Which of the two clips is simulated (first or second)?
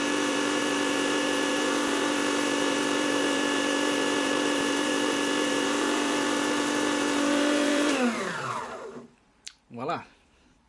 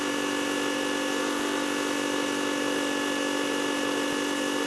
first